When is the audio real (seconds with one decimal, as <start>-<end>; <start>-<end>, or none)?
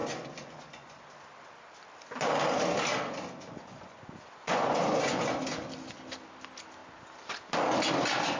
1.0-3.6; 5.2-8.4